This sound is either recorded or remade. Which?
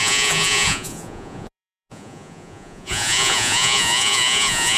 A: remade